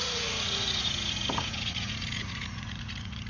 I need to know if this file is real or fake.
fake